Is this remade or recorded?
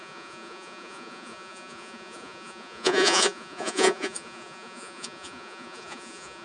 remade